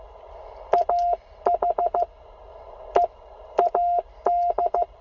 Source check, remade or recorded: recorded